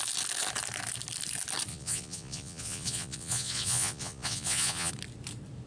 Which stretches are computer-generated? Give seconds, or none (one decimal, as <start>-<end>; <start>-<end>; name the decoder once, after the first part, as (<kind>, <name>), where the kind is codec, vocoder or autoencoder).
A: 1.7-4.9 (vocoder, Vocos)